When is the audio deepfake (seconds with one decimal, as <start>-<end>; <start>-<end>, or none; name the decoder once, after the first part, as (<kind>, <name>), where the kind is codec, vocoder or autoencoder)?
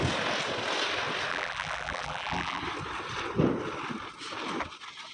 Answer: 1.3-2.6 (vocoder, BigVGAN v2)